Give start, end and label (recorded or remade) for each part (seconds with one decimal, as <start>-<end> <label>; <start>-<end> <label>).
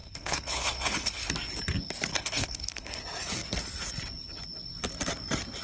0.0-1.3 remade; 1.3-2.1 recorded; 2.1-3.0 remade; 3.0-5.6 recorded